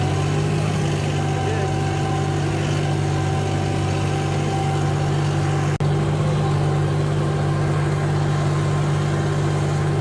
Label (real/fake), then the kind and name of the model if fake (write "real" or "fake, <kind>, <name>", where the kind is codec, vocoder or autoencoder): real